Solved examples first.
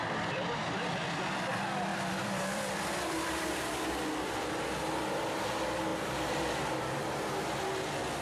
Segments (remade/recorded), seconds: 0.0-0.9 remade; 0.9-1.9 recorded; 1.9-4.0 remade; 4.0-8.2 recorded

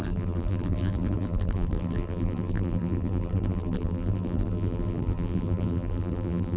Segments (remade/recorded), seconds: 0.0-6.6 remade

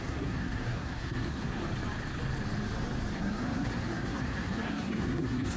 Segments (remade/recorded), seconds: 0.0-1.6 remade; 1.6-3.1 recorded; 3.1-5.6 remade

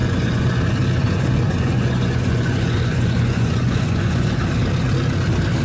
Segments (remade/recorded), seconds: 0.0-0.6 remade; 0.6-1.0 recorded; 1.0-4.4 remade; 4.4-5.6 recorded

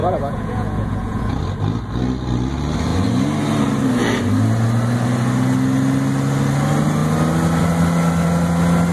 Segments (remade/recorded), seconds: 0.0-1.4 remade; 1.4-8.9 recorded

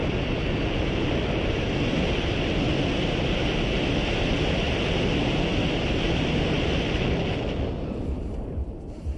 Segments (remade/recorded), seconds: 0.0-9.2 recorded